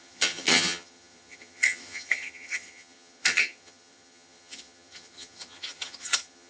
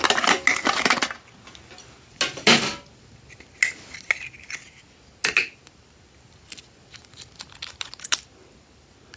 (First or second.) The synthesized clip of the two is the first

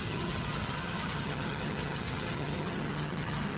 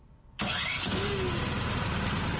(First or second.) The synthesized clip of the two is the first